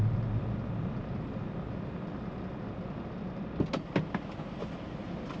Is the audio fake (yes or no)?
no